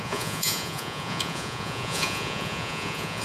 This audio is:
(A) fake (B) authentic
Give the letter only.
A